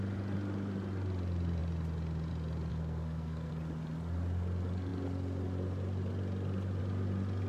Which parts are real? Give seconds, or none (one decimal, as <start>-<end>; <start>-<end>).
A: 0.0-2.7; 3.5-7.5